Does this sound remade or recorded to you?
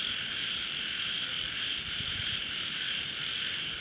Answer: recorded